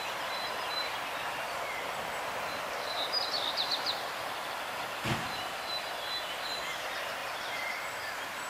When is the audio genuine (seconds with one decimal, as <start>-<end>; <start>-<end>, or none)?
0.0-0.8; 4.1-7.2